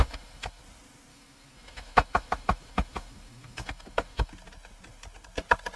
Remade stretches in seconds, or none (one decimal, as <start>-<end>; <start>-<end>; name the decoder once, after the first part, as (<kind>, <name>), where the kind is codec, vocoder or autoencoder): 0.0-0.6 (autoencoder, DAC-VAE); 1.1-4.3